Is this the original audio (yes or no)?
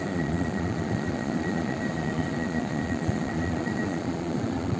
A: no